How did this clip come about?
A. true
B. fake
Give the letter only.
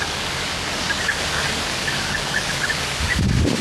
B